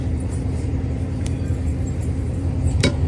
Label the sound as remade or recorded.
remade